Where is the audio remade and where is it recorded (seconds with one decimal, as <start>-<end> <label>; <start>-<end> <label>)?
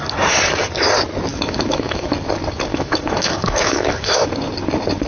0.0-1.3 recorded; 1.3-2.1 remade; 2.1-2.7 recorded; 2.7-4.3 remade; 4.3-5.1 recorded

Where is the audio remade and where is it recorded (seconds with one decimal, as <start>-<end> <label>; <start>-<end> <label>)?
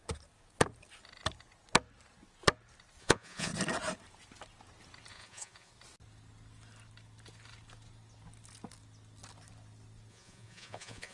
0.0-3.0 recorded; 3.0-3.5 remade; 3.5-5.1 recorded; 5.1-5.7 remade; 5.7-10.1 recorded; 10.1-11.1 remade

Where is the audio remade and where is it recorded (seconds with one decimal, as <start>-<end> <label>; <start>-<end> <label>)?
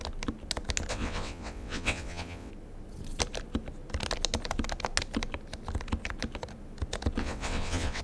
0.0-0.9 recorded; 0.9-2.5 remade; 2.5-7.2 recorded; 7.2-8.0 remade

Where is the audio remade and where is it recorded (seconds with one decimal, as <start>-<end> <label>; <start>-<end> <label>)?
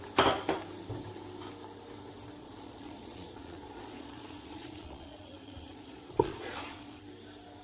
0.0-2.4 recorded; 2.4-7.0 remade; 7.0-7.6 recorded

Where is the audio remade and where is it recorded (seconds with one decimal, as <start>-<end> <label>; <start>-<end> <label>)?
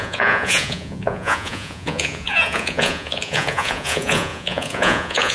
0.0-5.3 remade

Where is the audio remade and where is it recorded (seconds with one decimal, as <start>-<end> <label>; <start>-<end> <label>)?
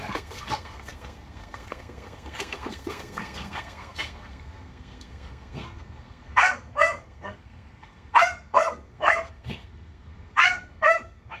0.0-11.4 remade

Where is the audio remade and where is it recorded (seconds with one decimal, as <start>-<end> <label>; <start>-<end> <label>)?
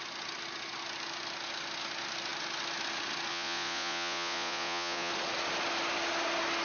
0.0-3.3 recorded; 3.3-5.1 remade; 5.1-6.6 recorded